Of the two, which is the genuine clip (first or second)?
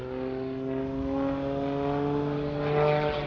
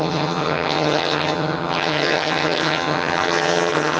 first